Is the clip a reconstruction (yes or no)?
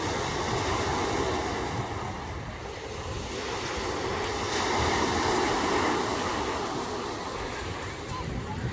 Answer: no